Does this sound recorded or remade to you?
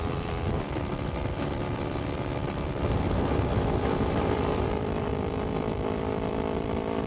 remade